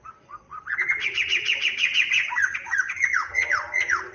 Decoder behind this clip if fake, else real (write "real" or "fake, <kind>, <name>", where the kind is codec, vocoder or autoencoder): fake, vocoder, Vocos